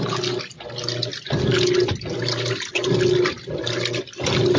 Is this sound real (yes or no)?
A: yes